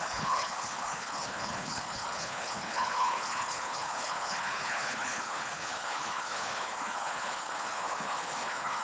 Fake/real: fake